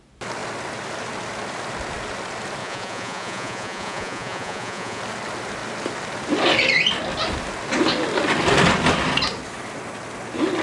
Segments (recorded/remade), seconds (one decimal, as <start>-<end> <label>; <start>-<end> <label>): 0.0-2.6 recorded; 2.6-5.0 remade; 5.0-10.6 recorded